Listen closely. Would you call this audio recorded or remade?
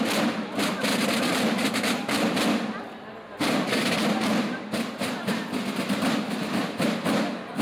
recorded